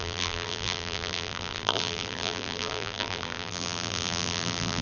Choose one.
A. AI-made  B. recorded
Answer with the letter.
A